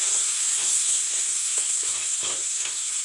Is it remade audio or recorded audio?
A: remade